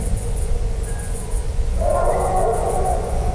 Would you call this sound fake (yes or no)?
yes